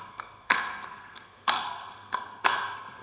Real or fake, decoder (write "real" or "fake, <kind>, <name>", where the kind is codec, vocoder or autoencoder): fake, codec, SNAC